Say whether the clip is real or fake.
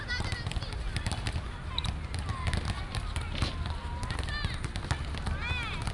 real